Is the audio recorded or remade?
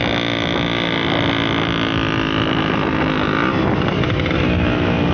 recorded